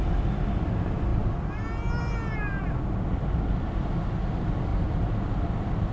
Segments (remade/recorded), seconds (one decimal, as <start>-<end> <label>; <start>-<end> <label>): 0.0-5.9 recorded